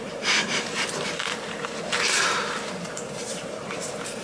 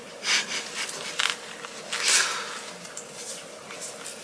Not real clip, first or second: first